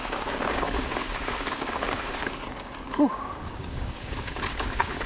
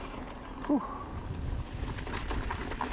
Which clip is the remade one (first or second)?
first